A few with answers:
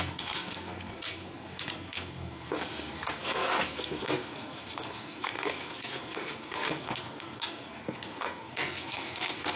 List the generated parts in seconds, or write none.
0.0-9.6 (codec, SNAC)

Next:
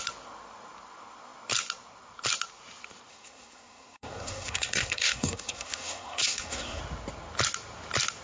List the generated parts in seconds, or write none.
3.1-6.8 (codec, SNAC)

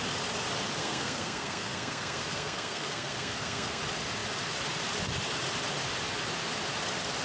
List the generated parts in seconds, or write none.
0.8-3.8 (codec, SNAC)

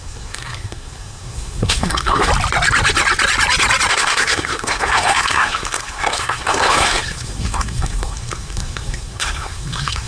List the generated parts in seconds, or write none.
0.0-2.3 (codec, SNAC); 3.9-10.1